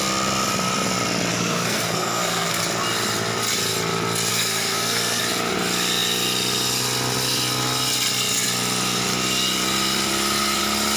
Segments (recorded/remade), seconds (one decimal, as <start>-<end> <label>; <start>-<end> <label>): 0.0-1.3 recorded; 1.3-2.6 remade; 2.6-4.3 recorded; 4.3-5.2 remade; 5.2-11.0 recorded